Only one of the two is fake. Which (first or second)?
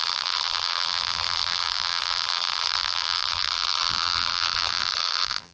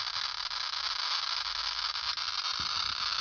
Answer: first